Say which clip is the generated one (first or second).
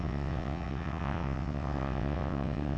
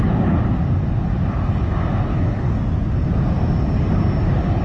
first